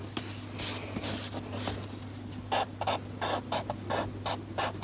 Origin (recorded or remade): recorded